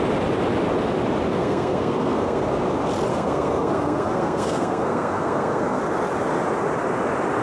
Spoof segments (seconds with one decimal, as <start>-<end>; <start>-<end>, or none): 1.3-2.5; 3.1-5.8